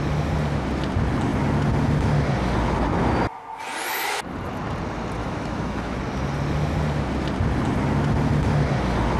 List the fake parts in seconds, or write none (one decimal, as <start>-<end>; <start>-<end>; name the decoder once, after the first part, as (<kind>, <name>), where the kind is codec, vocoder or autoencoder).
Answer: 5.2-6.0 (autoencoder, DAC-VAE)